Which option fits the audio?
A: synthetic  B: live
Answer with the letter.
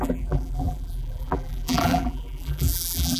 A